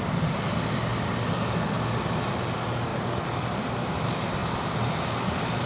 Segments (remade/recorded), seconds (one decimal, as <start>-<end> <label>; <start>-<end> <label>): 0.0-0.9 recorded; 0.9-1.4 remade; 1.4-2.9 recorded; 2.9-4.0 remade; 4.0-4.4 recorded; 4.4-5.0 remade; 5.0-5.7 recorded